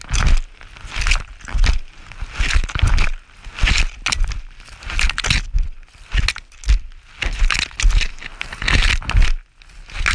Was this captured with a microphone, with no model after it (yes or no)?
yes